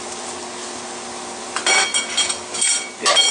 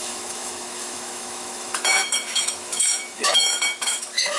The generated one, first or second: second